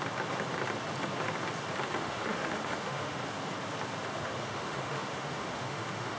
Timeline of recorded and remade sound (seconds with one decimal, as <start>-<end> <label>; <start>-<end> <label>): 0.0-2.0 recorded; 2.0-3.2 remade; 3.2-4.2 recorded; 4.2-6.2 remade